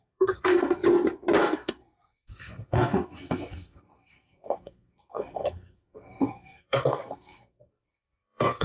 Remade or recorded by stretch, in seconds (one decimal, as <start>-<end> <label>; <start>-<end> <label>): 0.0-0.8 remade; 0.8-1.4 recorded; 1.4-8.6 remade